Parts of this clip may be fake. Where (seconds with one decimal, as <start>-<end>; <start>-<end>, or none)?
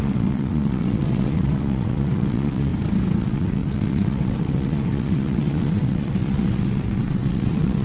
0.0-2.7; 3.2-7.8